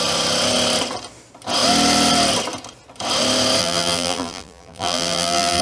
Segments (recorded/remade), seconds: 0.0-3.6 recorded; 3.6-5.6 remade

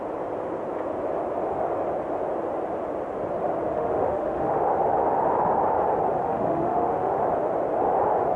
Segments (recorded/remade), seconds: 0.0-3.7 recorded; 3.7-4.7 remade; 4.7-6.2 recorded; 6.2-7.2 remade; 7.2-8.4 recorded

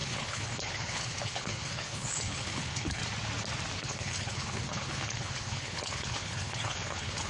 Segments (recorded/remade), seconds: 0.0-3.0 remade; 3.0-3.8 recorded; 3.8-7.3 remade

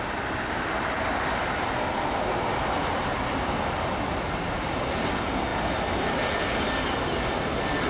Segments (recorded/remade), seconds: 0.0-7.9 recorded